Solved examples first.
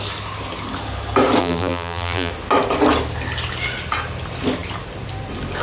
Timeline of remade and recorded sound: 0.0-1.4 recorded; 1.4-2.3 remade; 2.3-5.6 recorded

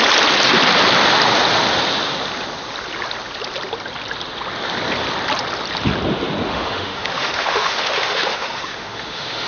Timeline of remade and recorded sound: 0.0-6.5 recorded; 6.5-9.5 remade